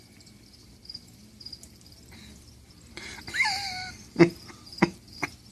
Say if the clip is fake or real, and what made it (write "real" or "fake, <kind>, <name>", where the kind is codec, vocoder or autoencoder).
fake, vocoder, BigVGAN v2